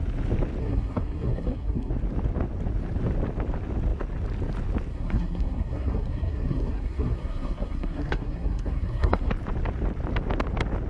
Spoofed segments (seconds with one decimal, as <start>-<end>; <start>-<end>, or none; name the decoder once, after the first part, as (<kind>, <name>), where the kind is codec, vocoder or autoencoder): 0.6-1.9 (codec, SNAC); 4.9-9.3

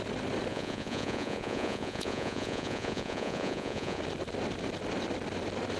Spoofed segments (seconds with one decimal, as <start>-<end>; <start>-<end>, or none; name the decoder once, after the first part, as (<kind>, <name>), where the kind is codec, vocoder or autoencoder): 0.5-4.0 (vocoder, Vocos)

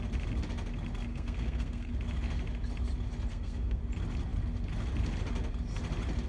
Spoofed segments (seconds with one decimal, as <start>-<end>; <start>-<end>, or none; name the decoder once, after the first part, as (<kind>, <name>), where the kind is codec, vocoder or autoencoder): 1.1-1.9 (codec, SNAC); 3.3-3.8

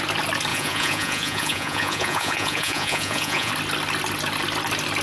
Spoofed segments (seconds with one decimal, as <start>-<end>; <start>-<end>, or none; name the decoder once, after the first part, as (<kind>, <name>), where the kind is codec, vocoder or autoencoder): 0.5-3.5 (vocoder, Vocos)

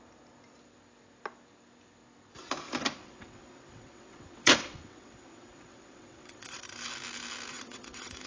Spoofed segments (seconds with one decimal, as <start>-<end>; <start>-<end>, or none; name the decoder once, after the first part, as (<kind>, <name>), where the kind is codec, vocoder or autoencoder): 3.0-6.6 (vocoder, WaveNeXt); 7.5-8.3

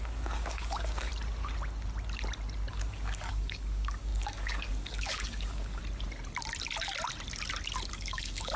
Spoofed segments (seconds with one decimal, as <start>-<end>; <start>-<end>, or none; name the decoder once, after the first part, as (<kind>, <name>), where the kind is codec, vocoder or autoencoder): 0.0-1.1 (codec, DAC); 2.7-5.8; 7.9-8.6

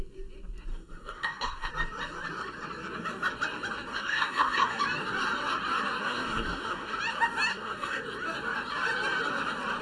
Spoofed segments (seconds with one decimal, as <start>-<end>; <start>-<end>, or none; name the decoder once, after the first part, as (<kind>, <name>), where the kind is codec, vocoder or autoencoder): 0.7-1.7 (codec, SNAC); 3.9-4.8; 6.0-7.0; 7.5-8.0